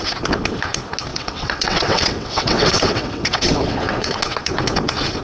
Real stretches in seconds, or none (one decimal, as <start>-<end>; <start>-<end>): 0.0-1.1; 4.2-5.2